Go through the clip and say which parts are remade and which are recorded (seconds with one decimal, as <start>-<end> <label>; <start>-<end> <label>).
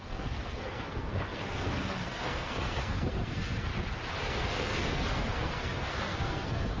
0.0-3.7 remade; 3.7-4.2 recorded; 4.2-6.8 remade